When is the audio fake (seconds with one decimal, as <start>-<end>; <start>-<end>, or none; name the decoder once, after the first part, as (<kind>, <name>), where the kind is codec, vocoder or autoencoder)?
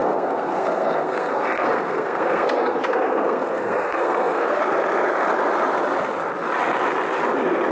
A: 0.0-4.6 (codec, SNAC)